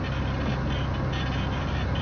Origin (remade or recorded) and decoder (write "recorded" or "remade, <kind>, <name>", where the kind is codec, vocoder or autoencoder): recorded